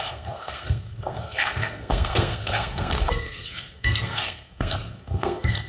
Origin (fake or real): fake